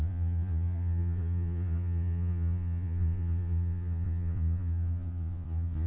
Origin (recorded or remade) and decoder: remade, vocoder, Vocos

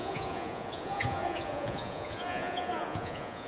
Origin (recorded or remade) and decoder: remade, vocoder, Vocos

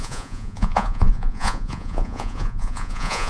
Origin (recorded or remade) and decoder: remade, vocoder, Vocos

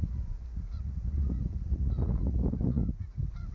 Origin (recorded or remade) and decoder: remade, vocoder, Vocos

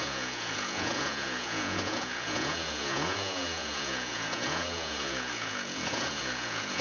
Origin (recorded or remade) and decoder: remade, vocoder, Vocos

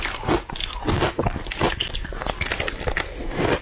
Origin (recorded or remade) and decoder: recorded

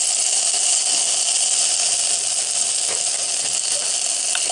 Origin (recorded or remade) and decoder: recorded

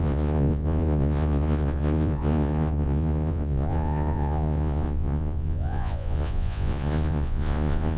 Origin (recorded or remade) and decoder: remade, vocoder, Vocos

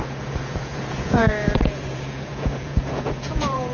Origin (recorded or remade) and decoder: remade, vocoder, Vocos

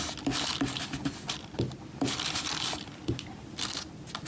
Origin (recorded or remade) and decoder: recorded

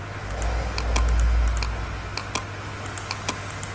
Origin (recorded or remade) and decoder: recorded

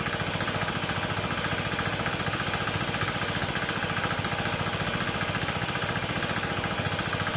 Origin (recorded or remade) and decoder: recorded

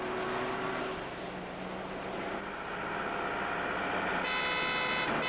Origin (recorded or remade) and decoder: recorded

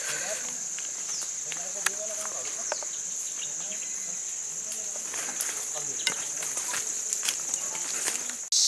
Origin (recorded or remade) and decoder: recorded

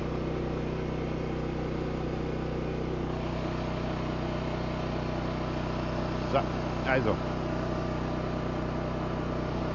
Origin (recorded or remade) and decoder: recorded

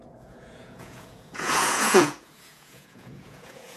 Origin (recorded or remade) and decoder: remade, vocoder, Vocos